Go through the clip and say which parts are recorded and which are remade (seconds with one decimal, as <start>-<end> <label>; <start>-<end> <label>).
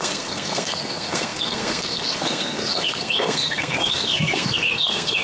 0.0-5.2 remade